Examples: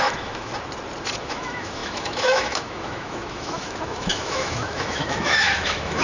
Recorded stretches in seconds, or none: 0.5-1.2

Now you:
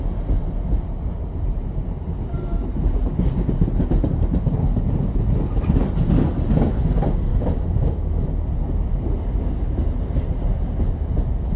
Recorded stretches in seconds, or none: 0.0-7.3; 8.3-11.6

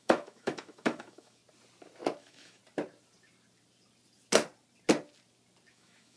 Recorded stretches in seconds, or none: 1.4-2.2; 2.6-5.7

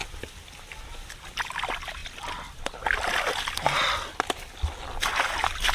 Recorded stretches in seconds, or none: 0.0-5.7

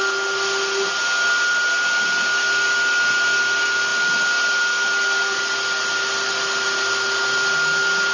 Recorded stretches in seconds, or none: 0.0-8.1